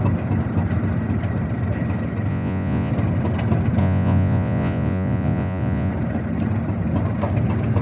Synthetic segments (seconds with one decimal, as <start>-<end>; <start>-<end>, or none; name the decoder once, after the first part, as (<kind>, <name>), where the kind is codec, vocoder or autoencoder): 2.3-2.9 (vocoder, Vocos); 3.8-5.9